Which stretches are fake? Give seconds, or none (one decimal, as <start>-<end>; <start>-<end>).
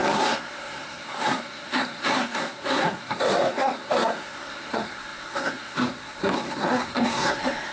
0.0-7.7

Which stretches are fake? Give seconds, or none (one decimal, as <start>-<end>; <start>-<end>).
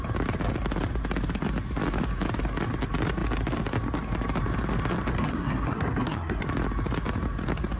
5.1-6.4